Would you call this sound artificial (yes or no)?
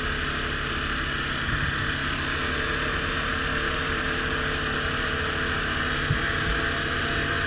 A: no